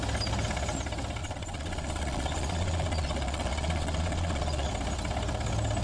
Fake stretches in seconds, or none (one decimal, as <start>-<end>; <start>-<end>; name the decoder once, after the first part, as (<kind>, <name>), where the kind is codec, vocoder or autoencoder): 1.2-4.7 (vocoder, Vocos)